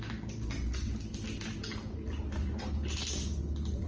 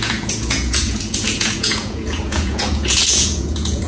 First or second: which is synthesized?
second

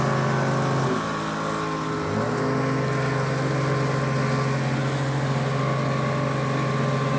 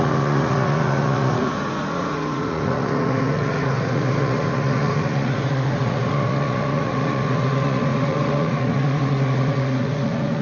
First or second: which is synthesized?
second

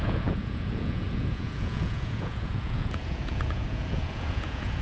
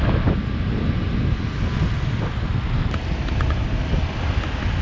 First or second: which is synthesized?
first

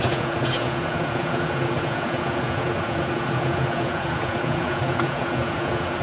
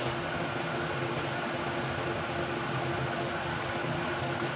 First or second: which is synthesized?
first